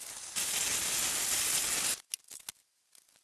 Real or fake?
real